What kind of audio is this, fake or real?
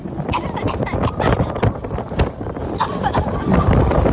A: real